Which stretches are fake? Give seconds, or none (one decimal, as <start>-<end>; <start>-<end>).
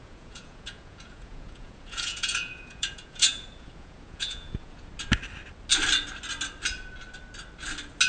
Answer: 0.0-4.9